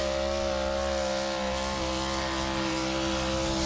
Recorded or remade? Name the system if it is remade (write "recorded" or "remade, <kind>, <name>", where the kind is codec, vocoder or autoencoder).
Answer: recorded